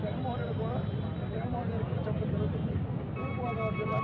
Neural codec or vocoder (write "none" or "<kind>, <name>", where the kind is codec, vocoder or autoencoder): none